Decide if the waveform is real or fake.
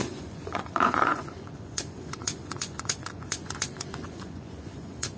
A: fake